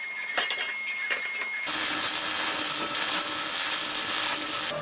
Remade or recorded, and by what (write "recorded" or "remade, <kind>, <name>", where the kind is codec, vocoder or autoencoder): recorded